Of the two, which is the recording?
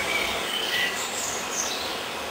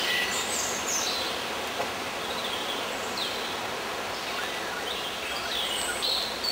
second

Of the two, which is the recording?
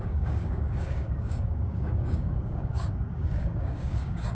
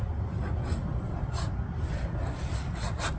second